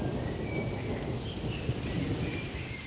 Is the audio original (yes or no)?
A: yes